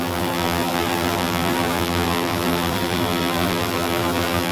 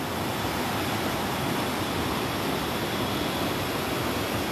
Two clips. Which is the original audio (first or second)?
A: second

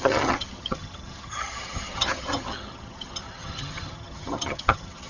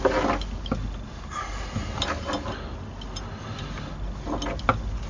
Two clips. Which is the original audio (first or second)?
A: second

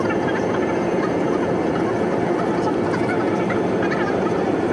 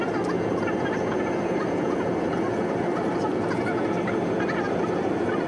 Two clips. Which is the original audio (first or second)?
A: second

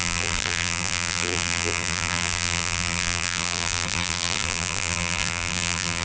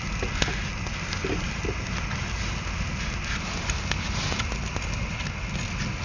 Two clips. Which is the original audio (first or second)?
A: second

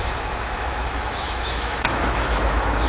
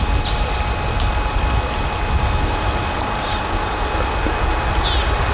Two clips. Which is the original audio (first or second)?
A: second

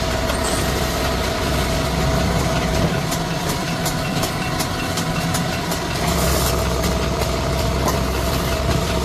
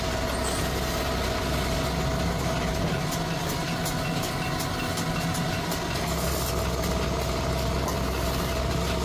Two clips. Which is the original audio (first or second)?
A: second